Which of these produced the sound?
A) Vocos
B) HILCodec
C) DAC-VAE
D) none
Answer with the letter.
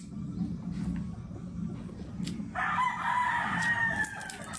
D